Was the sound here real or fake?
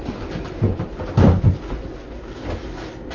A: real